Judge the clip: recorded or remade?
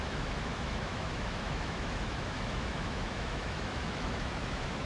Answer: remade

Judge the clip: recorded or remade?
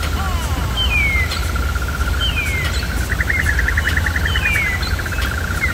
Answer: recorded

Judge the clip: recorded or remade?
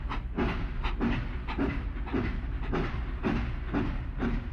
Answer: recorded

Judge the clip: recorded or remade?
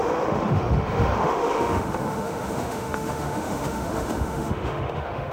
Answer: remade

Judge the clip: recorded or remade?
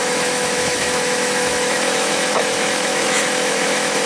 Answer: remade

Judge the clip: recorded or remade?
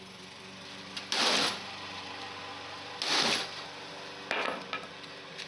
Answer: recorded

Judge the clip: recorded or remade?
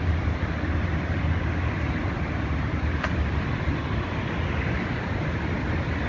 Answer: recorded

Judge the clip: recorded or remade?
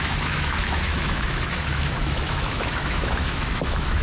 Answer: remade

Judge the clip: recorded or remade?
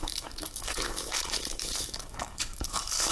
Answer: remade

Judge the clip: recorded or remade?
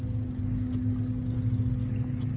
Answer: recorded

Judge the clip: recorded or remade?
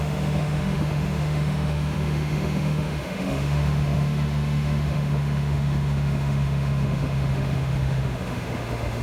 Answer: remade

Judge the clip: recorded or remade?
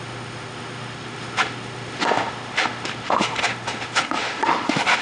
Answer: remade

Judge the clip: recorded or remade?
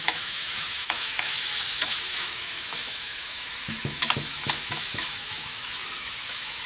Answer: remade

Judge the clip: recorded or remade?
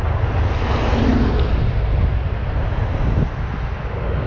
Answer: recorded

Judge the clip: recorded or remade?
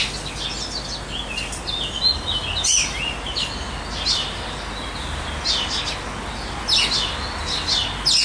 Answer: recorded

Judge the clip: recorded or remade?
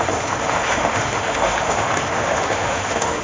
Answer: remade